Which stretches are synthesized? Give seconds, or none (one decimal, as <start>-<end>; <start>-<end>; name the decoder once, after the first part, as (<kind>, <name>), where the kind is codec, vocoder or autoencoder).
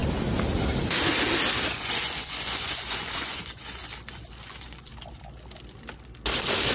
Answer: 1.7-3.8 (vocoder, Vocos); 4.4-4.9